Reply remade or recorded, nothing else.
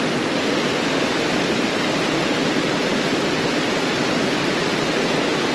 recorded